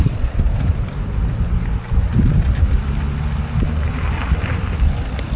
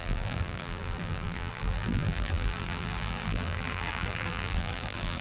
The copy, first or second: second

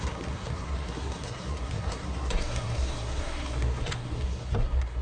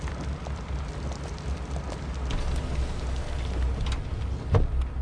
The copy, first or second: first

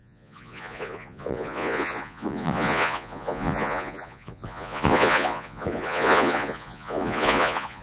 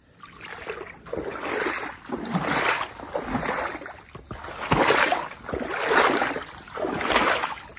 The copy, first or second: first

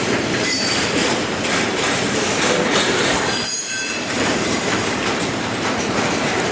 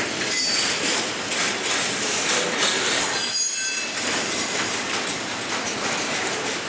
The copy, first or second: first